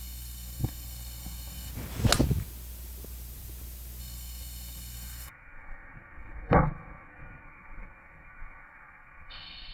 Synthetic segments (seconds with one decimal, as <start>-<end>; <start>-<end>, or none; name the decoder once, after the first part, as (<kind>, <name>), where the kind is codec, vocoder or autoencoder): 0.0-1.7 (codec, SNAC); 4.0-9.7